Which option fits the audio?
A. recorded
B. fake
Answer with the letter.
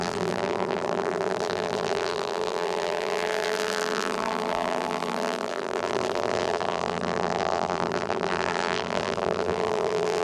B